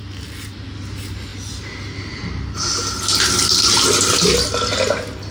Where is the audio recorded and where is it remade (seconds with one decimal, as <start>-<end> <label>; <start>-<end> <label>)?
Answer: 0.0-5.3 recorded